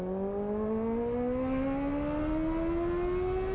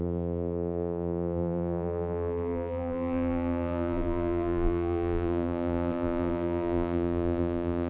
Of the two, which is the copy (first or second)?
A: second